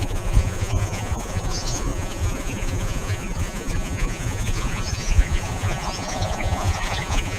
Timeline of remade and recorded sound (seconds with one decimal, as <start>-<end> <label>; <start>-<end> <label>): 0.0-7.4 remade